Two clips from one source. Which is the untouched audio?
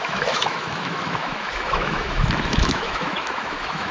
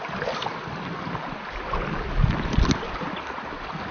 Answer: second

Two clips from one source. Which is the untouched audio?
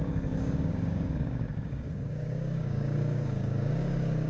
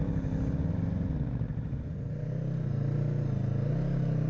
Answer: second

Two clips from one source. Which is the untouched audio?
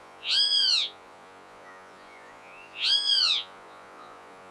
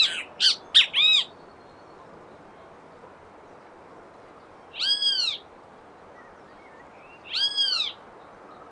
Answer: second